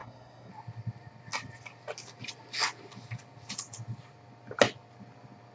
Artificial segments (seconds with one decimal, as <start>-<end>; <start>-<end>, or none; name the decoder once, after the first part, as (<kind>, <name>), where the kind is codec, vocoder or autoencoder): 0.0-0.5 (codec, SNAC)